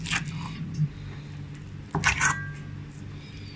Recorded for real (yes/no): yes